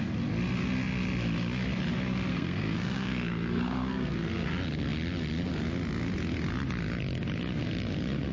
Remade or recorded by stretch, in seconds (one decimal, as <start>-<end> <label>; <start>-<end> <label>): 0.0-2.3 recorded; 2.3-4.5 remade; 4.5-8.3 recorded